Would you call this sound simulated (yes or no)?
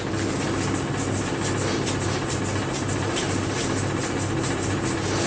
no